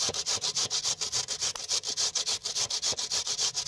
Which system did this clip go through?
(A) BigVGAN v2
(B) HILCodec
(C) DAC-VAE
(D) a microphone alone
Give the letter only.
D